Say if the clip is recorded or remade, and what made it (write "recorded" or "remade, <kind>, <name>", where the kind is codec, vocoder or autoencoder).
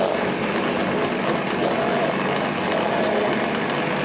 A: recorded